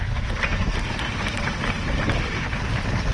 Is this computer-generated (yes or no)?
no